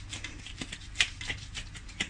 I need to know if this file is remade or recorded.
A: recorded